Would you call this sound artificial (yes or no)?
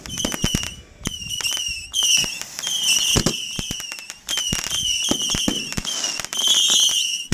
no